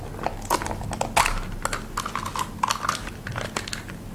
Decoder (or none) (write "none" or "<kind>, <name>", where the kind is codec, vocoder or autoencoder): none